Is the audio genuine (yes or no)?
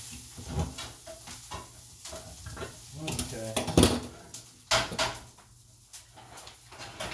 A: yes